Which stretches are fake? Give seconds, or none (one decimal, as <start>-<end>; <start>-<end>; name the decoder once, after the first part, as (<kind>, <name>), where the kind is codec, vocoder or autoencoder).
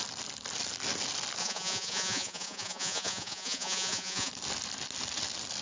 1.4-4.3 (vocoder, Vocos)